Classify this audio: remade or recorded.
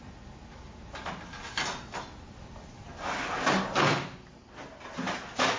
recorded